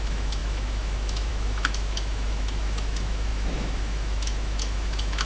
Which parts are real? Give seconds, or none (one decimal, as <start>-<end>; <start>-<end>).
none

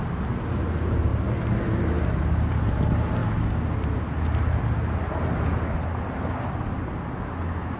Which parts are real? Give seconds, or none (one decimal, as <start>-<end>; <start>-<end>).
0.0-7.8

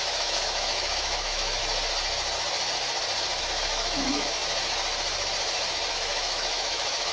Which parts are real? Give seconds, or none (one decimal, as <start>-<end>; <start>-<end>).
1.6-3.4; 4.4-5.9